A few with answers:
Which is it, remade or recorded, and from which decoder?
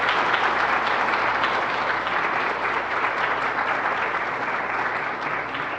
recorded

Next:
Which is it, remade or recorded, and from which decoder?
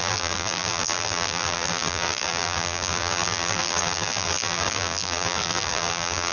remade, vocoder, BigVGAN v2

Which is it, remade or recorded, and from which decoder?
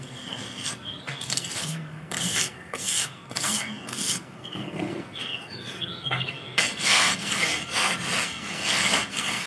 remade, codec, SNAC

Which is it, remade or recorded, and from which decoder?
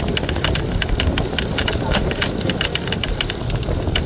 recorded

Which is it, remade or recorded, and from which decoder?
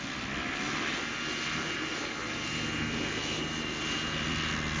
recorded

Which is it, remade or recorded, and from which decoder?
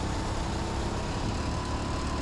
recorded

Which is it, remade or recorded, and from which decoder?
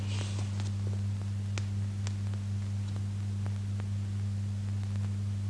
recorded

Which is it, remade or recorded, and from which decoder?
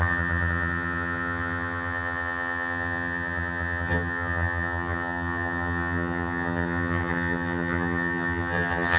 remade, vocoder, HiFi-GAN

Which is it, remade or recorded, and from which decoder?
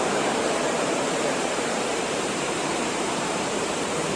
remade, vocoder, BigVGAN v2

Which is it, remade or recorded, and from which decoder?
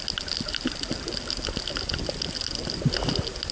recorded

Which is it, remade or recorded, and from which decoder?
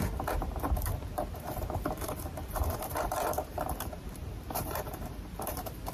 remade, vocoder, BigVGAN v2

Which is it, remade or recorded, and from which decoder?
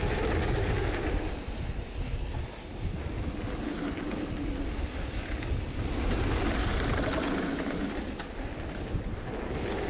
recorded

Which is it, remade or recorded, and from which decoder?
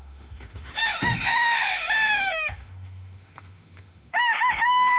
remade, autoencoder, DAC-VAE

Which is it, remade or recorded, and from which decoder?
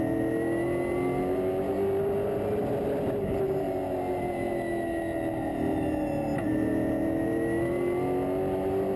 recorded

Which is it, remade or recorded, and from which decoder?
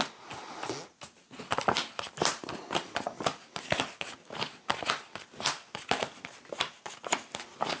recorded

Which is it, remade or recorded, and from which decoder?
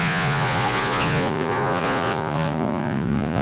remade, vocoder, Vocos